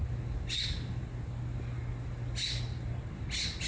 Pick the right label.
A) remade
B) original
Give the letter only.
B